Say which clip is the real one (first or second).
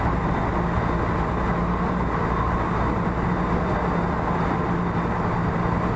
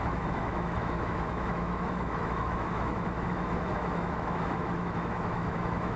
first